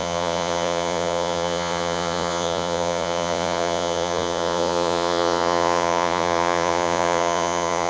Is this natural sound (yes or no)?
no